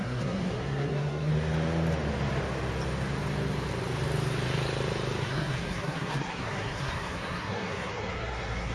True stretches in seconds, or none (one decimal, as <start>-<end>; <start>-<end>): 1.3-5.2